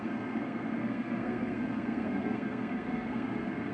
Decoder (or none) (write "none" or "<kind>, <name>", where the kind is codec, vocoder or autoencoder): codec, SNAC